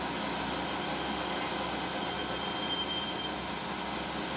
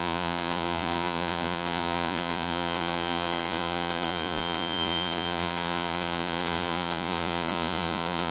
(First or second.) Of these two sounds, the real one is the first